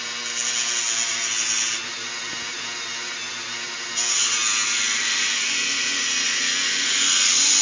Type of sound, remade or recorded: recorded